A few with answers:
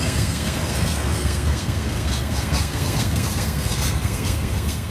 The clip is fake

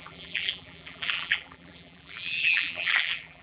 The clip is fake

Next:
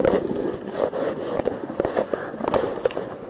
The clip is fake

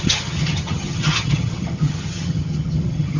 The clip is fake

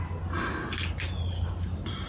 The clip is real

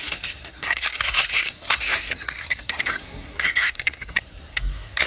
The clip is fake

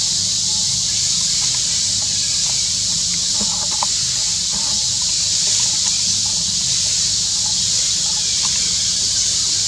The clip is real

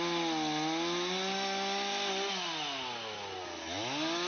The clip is real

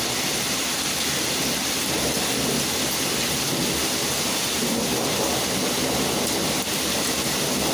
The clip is real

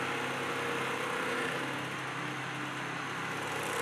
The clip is real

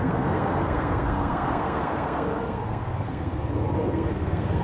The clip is fake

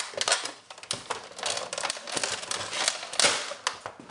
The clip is real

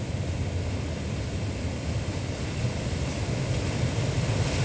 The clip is real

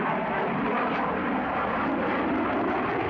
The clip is real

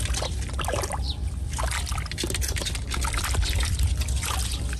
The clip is real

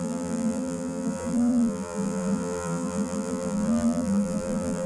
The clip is fake